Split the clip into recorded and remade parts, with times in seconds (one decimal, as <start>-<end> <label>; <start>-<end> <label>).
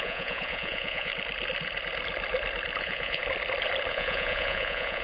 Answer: 0.0-1.1 remade; 1.1-2.8 recorded; 2.8-3.2 remade; 3.2-3.9 recorded; 3.9-5.0 remade